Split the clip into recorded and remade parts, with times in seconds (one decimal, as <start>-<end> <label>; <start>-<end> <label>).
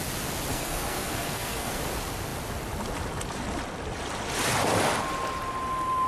0.0-0.5 recorded; 0.5-1.8 remade; 1.8-6.1 recorded